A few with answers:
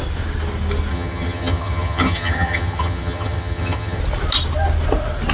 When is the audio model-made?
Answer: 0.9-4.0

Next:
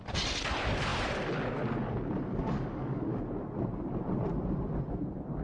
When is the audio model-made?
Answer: 2.3-3.2

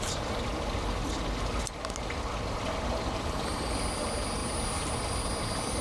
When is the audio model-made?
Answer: none

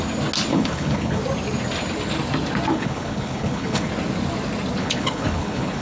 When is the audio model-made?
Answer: 0.5-1.2; 2.7-3.9; 4.8-5.8